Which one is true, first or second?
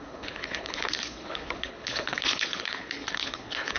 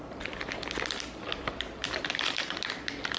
second